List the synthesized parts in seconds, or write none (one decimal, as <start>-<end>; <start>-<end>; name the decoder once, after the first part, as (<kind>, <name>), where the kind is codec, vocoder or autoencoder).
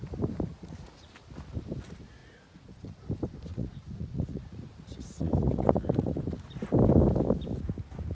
0.5-1.1 (vocoder, Vocos); 2.2-3.1; 3.5-6.2